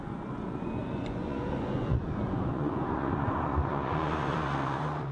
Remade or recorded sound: remade